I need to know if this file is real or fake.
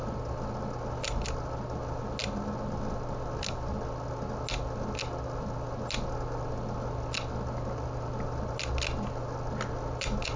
real